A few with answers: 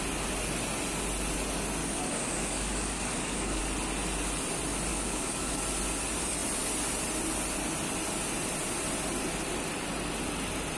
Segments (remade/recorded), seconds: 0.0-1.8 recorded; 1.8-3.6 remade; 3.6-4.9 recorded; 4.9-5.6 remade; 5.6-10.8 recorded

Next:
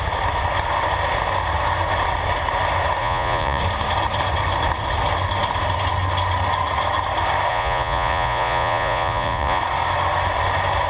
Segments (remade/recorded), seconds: 0.0-3.0 recorded; 3.0-3.6 remade; 3.6-7.5 recorded; 7.5-9.6 remade; 9.6-10.9 recorded

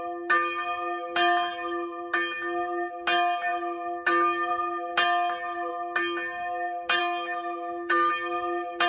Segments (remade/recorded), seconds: 0.0-7.0 recorded; 7.0-8.1 remade; 8.1-8.9 recorded

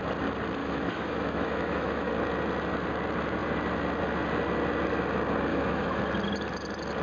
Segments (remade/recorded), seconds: 0.0-0.6 recorded; 0.6-2.1 remade; 2.1-5.5 recorded; 5.5-6.0 remade; 6.0-7.0 recorded

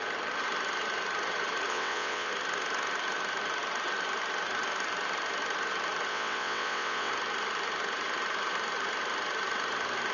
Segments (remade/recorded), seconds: 0.0-1.7 recorded; 1.7-2.3 remade; 2.3-6.1 recorded; 6.1-7.1 remade; 7.1-10.1 recorded